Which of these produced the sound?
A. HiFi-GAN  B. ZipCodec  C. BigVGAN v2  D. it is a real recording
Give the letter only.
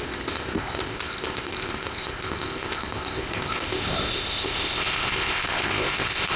B